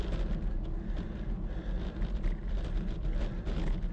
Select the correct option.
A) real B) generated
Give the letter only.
A